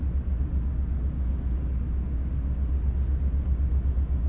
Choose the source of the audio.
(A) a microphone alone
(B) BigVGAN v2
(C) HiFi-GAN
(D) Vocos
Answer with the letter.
A